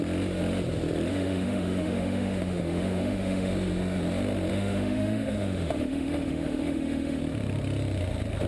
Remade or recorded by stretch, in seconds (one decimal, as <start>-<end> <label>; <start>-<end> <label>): 0.0-1.1 recorded; 1.1-3.5 remade; 3.5-4.5 recorded; 4.5-7.2 remade; 7.2-8.5 recorded